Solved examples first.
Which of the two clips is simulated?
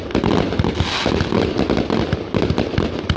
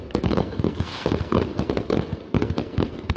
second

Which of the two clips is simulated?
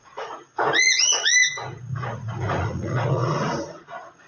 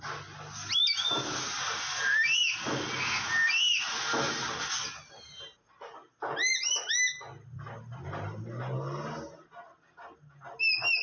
first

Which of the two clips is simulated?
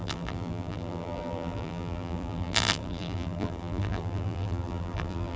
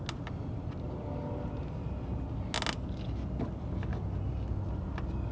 first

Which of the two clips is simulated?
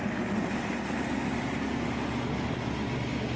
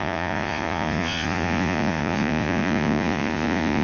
second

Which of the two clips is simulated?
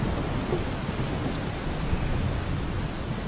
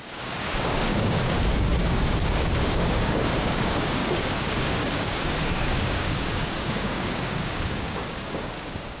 second